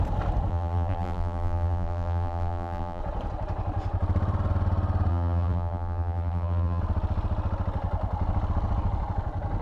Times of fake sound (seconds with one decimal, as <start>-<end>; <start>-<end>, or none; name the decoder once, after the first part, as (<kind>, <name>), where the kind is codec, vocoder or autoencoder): 0.5-3.0 (vocoder, BigVGAN v2); 5.1-6.8